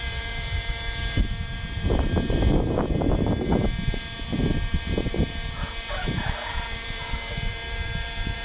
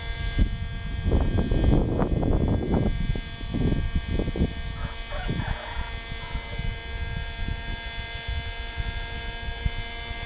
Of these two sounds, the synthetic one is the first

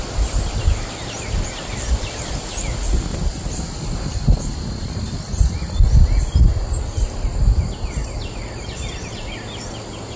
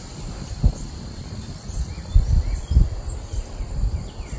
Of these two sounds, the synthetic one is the second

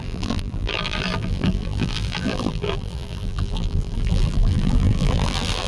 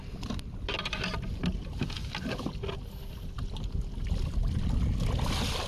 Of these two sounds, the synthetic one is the first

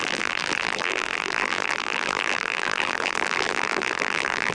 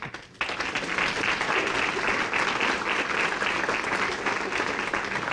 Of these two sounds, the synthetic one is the first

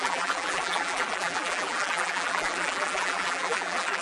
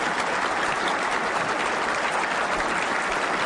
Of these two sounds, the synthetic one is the first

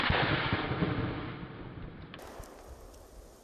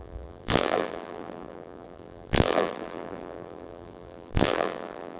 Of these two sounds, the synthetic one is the second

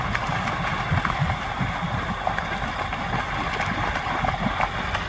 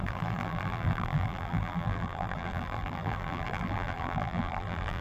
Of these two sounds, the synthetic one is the second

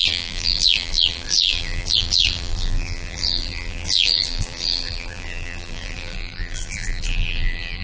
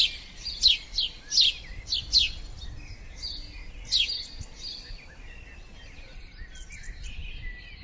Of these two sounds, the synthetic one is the first